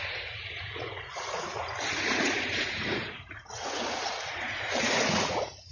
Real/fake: fake